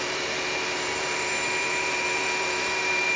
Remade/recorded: remade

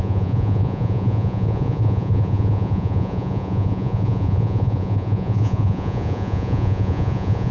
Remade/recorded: remade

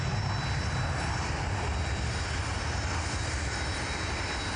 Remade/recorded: recorded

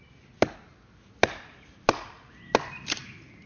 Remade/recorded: recorded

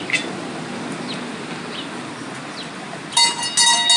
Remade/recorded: recorded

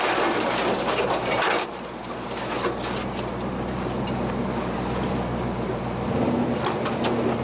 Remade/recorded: recorded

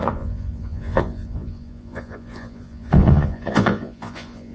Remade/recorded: remade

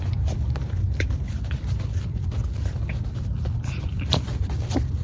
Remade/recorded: recorded